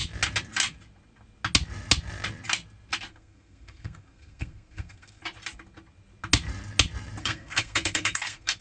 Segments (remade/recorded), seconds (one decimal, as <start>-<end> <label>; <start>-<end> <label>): 0.0-3.1 recorded; 3.1-5.2 remade; 5.2-7.2 recorded; 7.2-8.6 remade